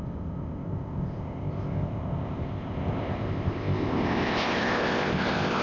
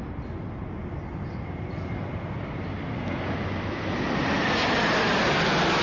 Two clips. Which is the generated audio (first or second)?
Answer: first